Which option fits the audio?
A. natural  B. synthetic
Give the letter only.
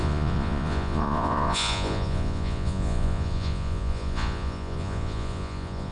B